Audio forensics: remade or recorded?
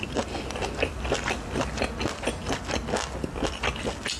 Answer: recorded